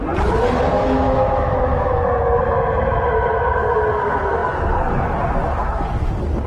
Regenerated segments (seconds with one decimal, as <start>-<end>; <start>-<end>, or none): 0.7-2.0